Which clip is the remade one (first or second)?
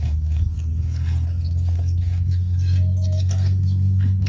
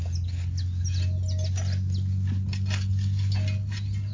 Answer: first